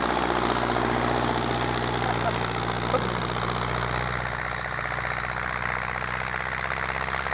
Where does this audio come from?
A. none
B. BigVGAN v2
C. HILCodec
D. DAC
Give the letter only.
A